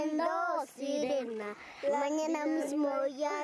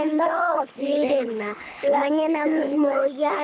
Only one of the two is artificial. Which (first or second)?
second